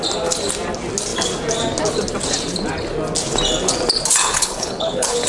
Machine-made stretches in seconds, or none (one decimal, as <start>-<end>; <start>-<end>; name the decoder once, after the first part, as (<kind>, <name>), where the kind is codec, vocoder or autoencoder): 4.2-5.3 (codec, HILCodec)